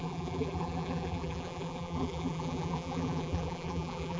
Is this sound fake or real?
fake